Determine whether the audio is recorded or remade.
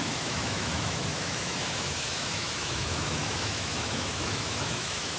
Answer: remade